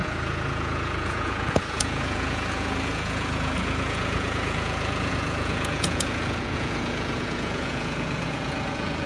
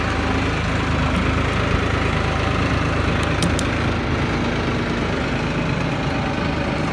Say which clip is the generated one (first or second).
first